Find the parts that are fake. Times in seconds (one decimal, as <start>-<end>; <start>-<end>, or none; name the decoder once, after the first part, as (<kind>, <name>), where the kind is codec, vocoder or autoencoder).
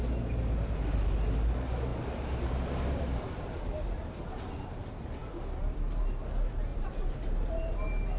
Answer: 1.9-3.5 (vocoder, BigVGAN v2); 6.7-8.2